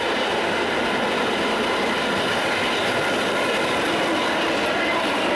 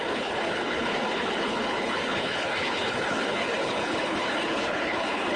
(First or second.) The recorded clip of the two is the first